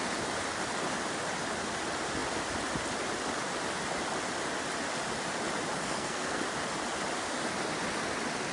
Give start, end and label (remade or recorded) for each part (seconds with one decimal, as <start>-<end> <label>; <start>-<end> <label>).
0.0-5.8 recorded; 5.8-6.4 remade; 6.4-8.5 recorded